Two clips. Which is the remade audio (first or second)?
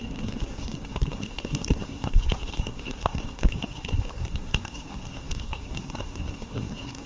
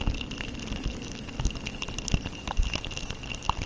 first